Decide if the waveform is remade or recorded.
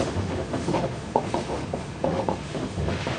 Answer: remade